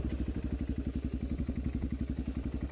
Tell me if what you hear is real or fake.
real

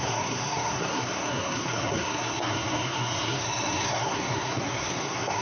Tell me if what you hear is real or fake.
fake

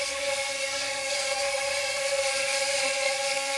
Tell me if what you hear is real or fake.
fake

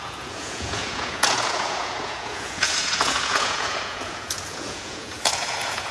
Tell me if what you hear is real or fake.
fake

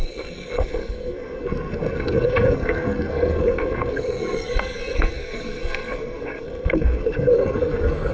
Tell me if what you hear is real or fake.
fake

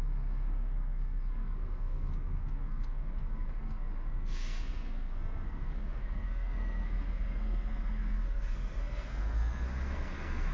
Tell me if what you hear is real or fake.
fake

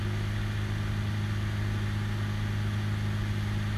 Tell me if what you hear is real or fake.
real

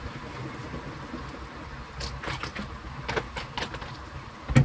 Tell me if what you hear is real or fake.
real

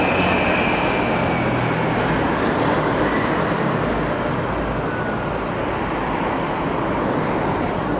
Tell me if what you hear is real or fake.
real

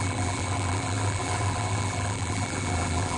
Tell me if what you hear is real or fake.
fake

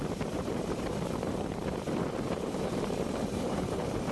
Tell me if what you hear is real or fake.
fake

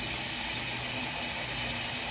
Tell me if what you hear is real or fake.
real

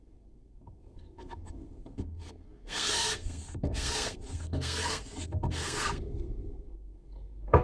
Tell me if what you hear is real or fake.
fake